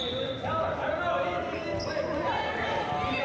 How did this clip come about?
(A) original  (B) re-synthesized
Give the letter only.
A